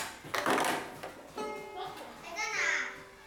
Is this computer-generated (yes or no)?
no